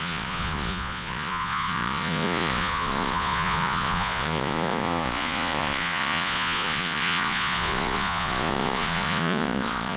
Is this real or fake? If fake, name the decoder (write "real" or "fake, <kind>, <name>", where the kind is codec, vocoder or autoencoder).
fake, vocoder, Vocos